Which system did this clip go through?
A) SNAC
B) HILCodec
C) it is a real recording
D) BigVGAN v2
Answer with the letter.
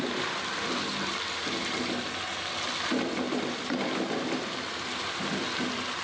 C